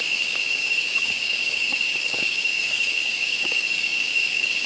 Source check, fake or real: fake